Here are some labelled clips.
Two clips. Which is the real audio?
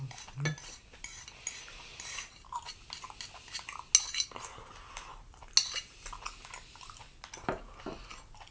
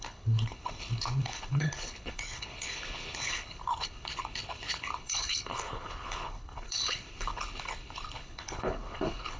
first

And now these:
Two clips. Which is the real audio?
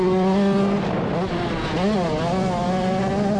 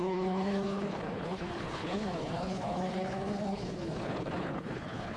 first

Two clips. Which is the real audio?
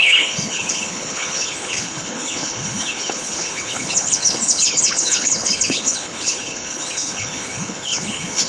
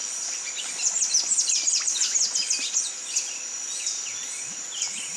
second